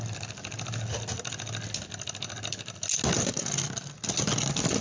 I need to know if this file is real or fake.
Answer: real